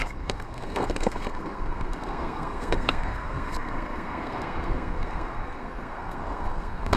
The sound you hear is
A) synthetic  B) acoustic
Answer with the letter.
A